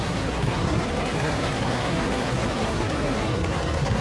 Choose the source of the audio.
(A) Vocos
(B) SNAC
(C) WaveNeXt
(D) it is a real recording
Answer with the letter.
B